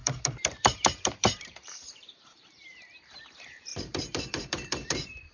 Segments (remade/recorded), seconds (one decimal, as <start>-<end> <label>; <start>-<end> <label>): 0.0-5.3 remade